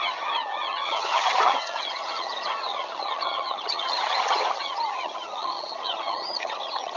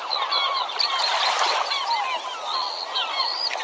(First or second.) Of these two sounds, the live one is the second